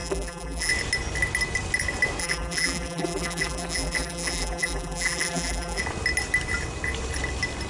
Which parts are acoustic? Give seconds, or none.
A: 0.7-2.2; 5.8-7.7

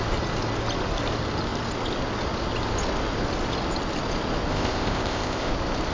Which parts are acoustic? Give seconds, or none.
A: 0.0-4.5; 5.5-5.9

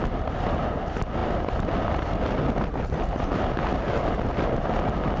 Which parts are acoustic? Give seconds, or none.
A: 0.0-5.2

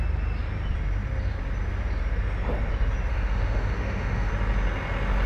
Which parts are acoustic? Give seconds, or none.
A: 0.0-3.1; 4.3-5.3

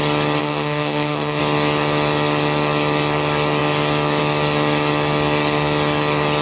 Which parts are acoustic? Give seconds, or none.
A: 0.0-0.4; 1.4-6.4

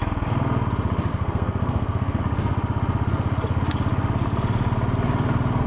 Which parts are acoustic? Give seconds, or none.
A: 0.0-1.1; 2.2-5.7